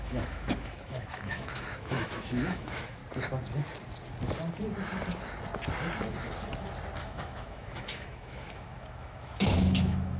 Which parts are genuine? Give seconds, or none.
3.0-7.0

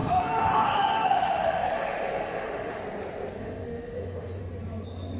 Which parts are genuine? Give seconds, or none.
2.8-3.4; 4.4-5.2

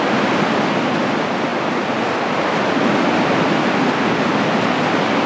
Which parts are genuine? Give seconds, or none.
0.0-5.3

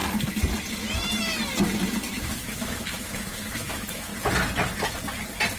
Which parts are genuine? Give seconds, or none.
0.0-2.1; 4.1-5.6

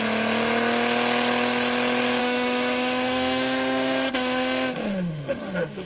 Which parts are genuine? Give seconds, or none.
0.0-2.2